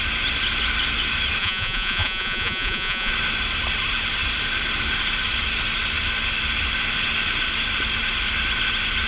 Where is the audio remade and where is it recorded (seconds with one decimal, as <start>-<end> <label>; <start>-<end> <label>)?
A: 0.0-1.4 recorded; 1.4-3.1 remade; 3.1-9.1 recorded